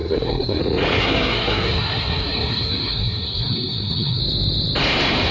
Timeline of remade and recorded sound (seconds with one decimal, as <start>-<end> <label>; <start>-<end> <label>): 0.0-0.6 remade; 0.6-1.0 recorded; 1.0-4.2 remade; 4.2-5.3 recorded